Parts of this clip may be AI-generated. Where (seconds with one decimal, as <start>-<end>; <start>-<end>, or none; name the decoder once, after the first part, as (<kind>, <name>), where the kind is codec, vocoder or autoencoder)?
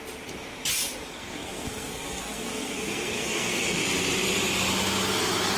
1.1-3.8 (codec, SNAC)